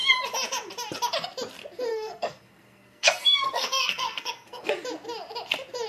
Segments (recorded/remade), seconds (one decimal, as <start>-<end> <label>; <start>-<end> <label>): 0.0-1.9 recorded; 1.9-4.7 remade; 4.7-5.9 recorded